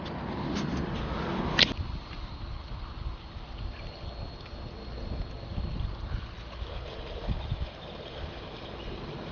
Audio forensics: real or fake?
real